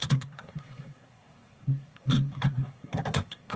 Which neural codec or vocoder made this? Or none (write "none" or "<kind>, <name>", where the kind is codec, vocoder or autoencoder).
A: codec, SNAC